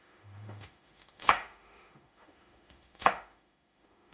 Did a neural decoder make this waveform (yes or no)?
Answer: yes